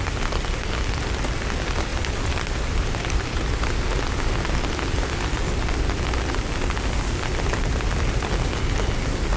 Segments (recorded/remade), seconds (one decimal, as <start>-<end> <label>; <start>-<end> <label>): 0.0-9.4 recorded